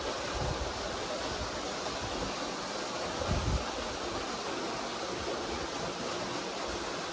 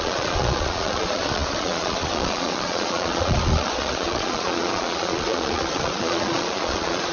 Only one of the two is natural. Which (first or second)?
first